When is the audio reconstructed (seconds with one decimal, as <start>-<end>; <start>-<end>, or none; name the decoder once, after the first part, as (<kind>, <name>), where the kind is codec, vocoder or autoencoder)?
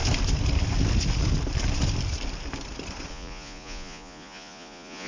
3.1-5.1 (vocoder, Vocos)